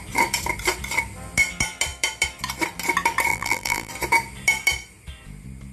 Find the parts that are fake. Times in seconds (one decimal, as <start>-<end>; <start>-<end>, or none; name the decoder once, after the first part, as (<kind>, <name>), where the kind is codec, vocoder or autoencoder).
3.3-3.9 (vocoder, BigVGAN v2)